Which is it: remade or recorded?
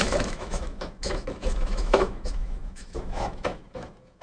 remade